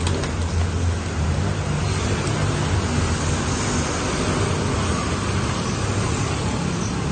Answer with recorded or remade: recorded